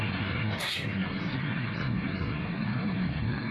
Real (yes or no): no